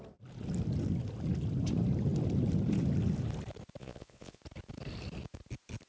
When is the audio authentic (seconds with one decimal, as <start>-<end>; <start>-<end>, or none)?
0.0-3.8; 4.4-5.9